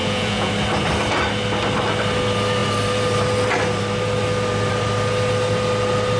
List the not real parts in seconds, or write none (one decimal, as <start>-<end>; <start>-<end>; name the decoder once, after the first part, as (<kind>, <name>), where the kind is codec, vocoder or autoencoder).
0.0-0.5 (vocoder, Vocos)